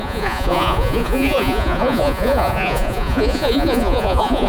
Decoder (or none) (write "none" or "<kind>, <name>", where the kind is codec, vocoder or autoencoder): vocoder, Vocos